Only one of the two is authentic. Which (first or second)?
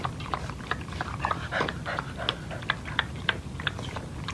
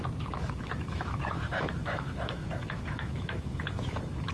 first